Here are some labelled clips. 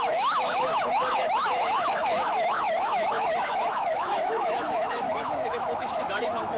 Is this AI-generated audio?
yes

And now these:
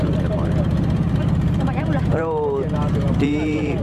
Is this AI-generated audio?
yes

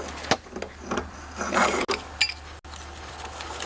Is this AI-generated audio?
no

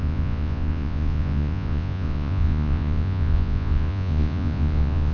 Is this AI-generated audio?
yes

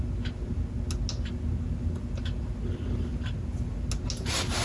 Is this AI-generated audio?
no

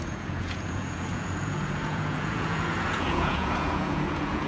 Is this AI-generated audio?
yes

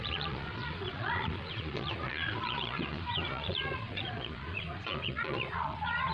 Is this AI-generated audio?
yes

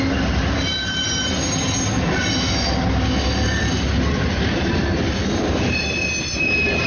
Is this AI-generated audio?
no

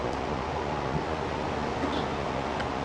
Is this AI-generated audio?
yes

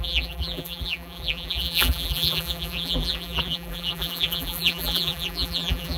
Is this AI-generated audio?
yes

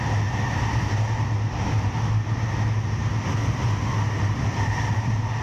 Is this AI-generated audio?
no